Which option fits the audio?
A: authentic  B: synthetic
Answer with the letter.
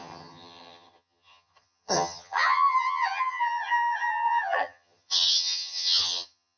B